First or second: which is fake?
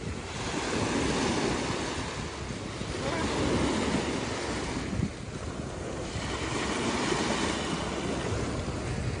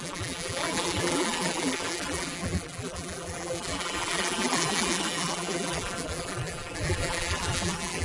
second